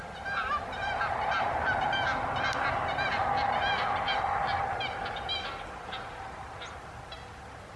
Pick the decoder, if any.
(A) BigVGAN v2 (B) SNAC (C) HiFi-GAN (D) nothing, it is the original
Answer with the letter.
D